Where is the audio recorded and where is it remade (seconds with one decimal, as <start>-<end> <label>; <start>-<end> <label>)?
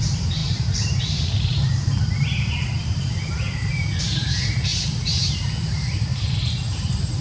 0.0-7.2 remade